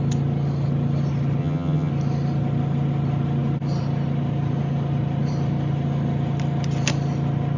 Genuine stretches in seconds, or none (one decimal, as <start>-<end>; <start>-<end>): 0.0-1.4; 1.9-7.6